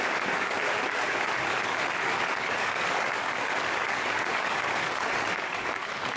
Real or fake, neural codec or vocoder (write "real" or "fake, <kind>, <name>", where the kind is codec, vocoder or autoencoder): fake, codec, DAC